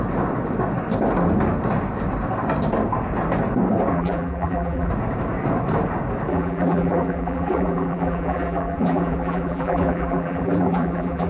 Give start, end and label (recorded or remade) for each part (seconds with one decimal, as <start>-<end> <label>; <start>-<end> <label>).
0.0-3.9 recorded; 3.9-4.9 remade; 4.9-6.3 recorded; 6.3-11.3 remade